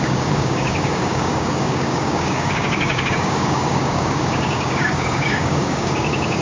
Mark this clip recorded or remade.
remade